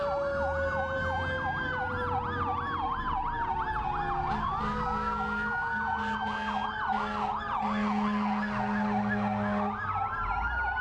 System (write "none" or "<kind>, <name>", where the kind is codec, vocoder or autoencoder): none